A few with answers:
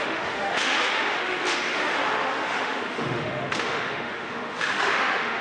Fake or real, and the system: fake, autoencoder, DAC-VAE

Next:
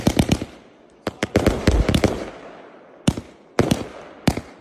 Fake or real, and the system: real